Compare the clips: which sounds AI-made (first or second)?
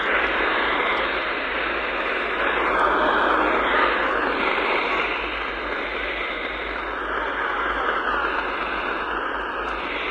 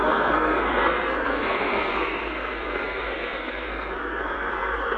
second